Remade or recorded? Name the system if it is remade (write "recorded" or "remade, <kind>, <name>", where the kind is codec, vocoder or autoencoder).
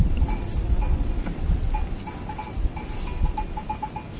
recorded